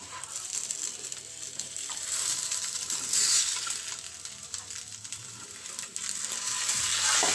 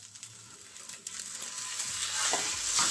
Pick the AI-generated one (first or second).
first